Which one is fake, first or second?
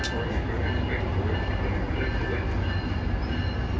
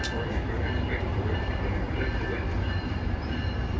second